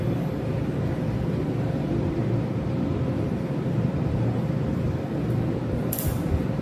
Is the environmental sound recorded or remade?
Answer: remade